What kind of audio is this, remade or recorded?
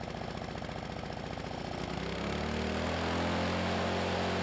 recorded